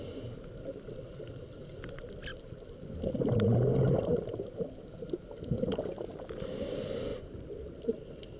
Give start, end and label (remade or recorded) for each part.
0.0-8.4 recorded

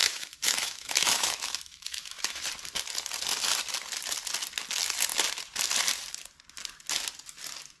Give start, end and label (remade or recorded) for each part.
0.0-2.4 remade; 2.4-7.8 recorded

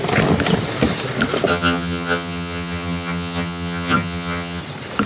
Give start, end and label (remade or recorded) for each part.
0.0-1.5 recorded; 1.5-4.6 remade; 4.6-5.1 recorded

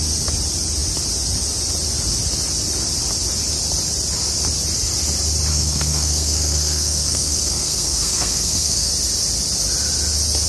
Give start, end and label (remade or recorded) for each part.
0.0-5.5 recorded; 5.5-8.9 remade; 8.9-10.5 recorded